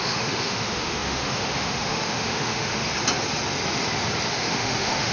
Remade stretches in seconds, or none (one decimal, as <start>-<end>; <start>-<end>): 0.0-2.8; 4.3-5.1